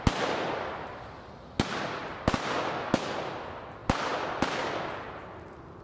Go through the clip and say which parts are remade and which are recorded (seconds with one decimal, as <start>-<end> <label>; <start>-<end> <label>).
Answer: 0.0-5.8 recorded